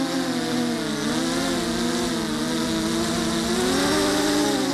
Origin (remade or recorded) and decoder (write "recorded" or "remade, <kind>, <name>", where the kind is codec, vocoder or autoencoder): recorded